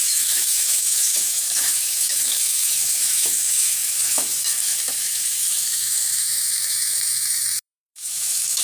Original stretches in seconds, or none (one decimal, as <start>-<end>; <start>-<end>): none